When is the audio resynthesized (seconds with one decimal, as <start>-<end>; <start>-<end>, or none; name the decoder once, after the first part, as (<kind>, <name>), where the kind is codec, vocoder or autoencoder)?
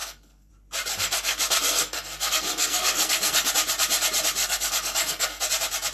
0.0-0.5 (codec, SNAC); 0.9-3.5; 4.4-5.4